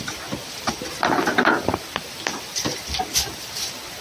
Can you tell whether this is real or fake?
real